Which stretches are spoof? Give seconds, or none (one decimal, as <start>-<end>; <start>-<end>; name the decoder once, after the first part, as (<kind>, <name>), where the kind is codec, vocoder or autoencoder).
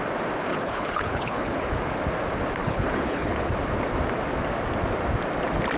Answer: 0.5-1.7 (codec, HILCodec); 2.6-3.5